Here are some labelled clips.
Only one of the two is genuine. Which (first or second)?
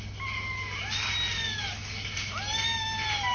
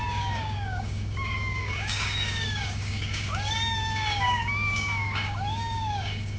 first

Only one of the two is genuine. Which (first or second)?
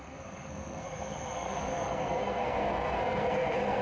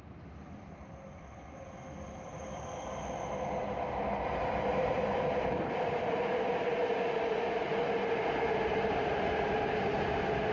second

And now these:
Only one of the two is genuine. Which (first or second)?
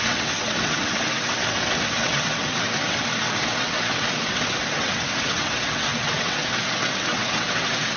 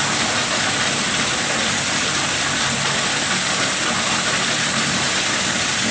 second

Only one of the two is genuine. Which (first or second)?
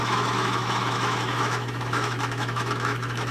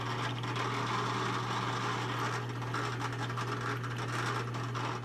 second